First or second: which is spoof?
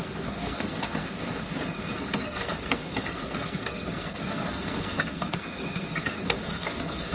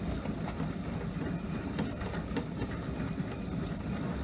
first